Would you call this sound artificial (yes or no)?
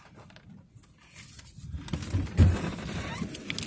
no